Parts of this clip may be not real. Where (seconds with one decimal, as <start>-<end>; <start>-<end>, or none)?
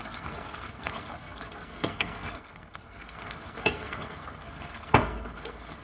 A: 0.0-5.8